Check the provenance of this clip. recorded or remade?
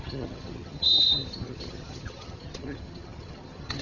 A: remade